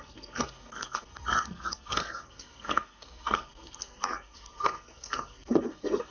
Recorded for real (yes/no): no